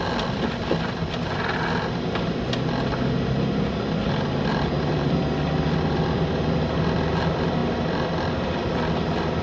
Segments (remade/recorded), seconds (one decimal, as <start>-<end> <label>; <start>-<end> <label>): 0.0-4.0 recorded; 4.0-6.3 remade; 6.3-7.6 recorded; 7.6-8.6 remade; 8.6-9.4 recorded